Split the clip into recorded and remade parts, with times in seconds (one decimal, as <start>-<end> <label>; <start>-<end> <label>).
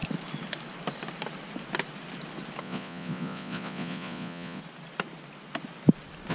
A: 0.0-2.6 recorded; 2.6-4.6 remade; 4.6-6.3 recorded